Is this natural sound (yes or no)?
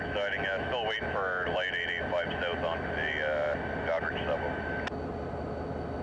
yes